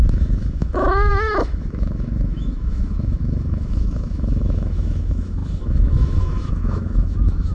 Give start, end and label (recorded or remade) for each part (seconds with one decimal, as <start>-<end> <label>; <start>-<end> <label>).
0.0-7.5 remade